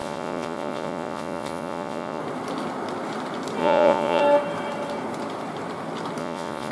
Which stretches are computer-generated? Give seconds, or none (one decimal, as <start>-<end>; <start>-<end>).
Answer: 0.0-2.2; 3.6-4.2; 6.2-6.7